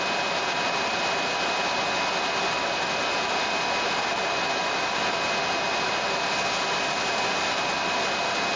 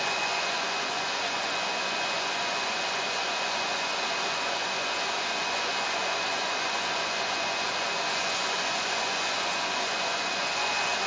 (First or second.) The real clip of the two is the first